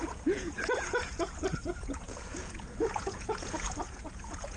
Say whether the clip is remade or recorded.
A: remade